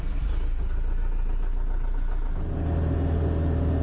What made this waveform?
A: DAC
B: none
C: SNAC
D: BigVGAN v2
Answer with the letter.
B